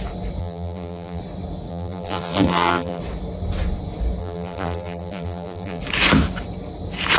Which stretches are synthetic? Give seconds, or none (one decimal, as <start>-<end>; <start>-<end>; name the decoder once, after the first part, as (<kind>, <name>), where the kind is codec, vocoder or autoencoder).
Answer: 0.4-1.2 (vocoder, BigVGAN v2); 1.7-3.0; 4.2-5.8